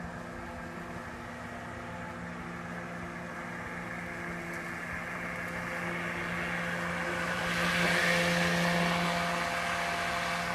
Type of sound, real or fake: real